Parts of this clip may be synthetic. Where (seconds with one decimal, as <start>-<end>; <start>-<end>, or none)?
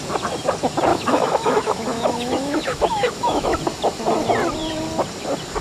0.9-3.6